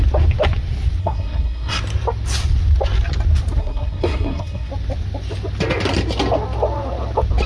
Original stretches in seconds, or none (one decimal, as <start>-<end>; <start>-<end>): 0.0-1.0; 1.8-3.6; 4.7-7.5